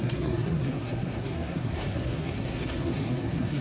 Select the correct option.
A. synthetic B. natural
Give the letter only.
A